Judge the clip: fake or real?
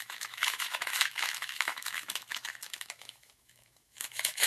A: fake